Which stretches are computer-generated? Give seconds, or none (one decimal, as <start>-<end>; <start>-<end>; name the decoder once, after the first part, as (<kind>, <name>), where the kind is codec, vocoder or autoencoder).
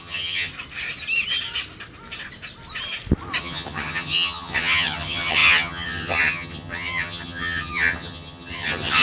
0.0-0.5 (vocoder, HiFi-GAN); 3.4-9.0